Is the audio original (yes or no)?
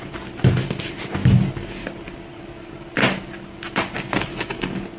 yes